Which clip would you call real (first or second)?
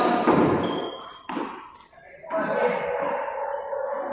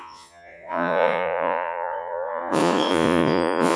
first